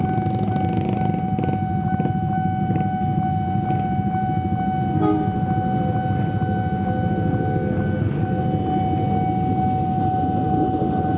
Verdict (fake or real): real